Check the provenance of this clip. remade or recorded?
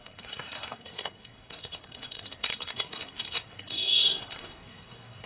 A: remade